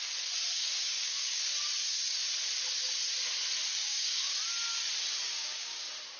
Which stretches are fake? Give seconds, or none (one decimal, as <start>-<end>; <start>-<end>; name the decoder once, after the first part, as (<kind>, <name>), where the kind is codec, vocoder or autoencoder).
0.6-1.4 (codec, DAC); 3.7-4.3; 5.2-5.8